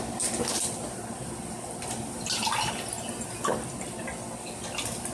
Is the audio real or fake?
real